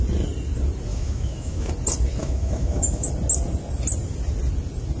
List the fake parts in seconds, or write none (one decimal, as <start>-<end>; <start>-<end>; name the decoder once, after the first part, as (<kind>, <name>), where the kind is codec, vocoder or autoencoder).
0.9-1.7 (autoencoder, DAC-VAE); 2.2-3.1